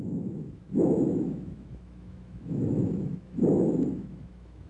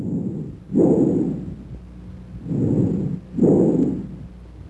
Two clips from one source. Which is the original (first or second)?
second